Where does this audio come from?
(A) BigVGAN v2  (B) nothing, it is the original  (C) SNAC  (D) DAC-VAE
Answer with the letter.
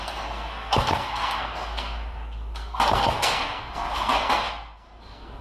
C